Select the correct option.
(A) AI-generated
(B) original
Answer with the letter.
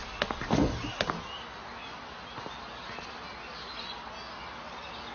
B